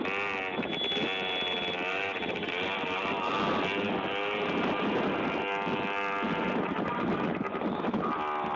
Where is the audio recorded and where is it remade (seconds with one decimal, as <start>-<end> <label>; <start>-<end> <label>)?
0.0-1.9 recorded; 1.9-3.3 remade; 3.3-8.6 recorded